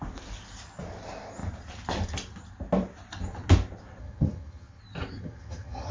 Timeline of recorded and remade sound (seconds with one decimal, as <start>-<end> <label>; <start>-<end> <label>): 0.0-4.0 recorded; 4.0-4.8 remade; 4.8-5.2 recorded; 5.2-5.9 remade